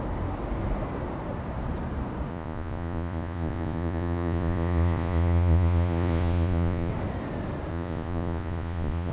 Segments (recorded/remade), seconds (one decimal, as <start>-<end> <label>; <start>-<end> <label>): 0.0-2.3 recorded; 2.3-6.9 remade; 6.9-7.7 recorded; 7.7-9.1 remade